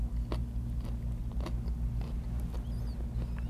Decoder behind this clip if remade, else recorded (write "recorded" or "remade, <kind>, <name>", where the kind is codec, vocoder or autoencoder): recorded